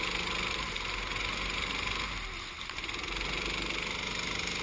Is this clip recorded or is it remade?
recorded